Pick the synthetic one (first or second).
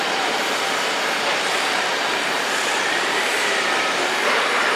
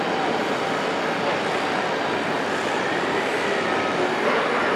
first